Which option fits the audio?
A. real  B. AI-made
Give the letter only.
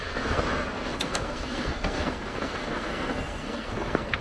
B